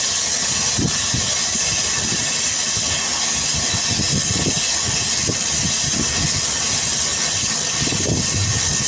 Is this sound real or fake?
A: real